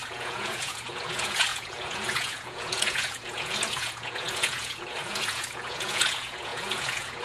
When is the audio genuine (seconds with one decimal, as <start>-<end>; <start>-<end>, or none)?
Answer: none